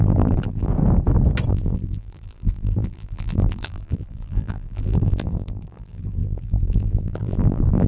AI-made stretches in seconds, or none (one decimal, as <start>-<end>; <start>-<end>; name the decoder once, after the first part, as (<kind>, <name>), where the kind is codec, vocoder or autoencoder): 0.0-0.7 (vocoder, BigVGAN v2); 1.5-7.9

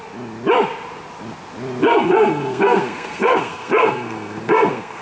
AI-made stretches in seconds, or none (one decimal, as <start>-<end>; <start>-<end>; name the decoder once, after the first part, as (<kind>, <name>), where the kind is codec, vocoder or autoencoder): 1.8-5.0 (codec, SNAC)